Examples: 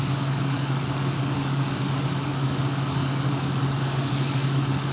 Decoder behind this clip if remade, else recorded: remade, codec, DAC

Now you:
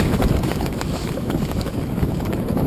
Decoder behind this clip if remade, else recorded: remade, codec, DAC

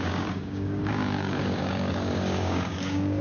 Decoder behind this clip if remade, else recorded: remade, codec, DAC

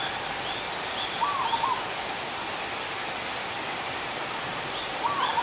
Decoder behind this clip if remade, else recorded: recorded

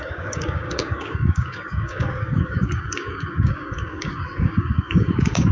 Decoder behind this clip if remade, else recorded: remade, codec, DAC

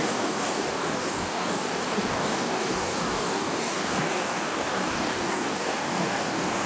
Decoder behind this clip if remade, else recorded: remade, codec, DAC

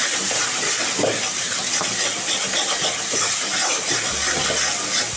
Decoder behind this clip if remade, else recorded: recorded